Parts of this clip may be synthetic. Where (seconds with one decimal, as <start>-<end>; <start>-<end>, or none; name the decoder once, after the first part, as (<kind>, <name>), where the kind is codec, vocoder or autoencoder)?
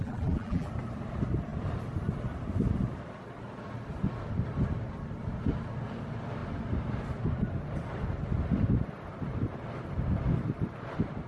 0.0-0.7 (vocoder, BigVGAN v2)